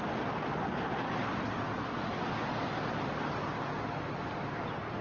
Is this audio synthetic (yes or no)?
no